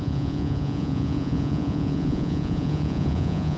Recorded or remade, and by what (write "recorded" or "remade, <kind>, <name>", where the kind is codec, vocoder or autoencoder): remade, vocoder, Vocos